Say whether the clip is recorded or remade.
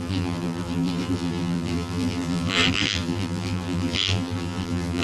remade